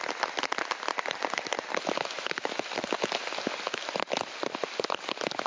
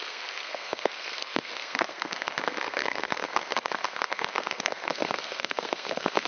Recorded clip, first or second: first